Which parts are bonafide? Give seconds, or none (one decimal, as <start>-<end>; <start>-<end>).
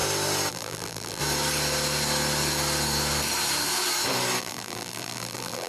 0.0-0.5; 1.2-4.4